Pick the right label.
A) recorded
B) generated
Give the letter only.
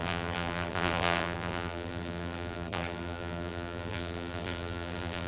B